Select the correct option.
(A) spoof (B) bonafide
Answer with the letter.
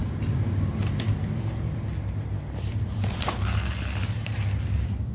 A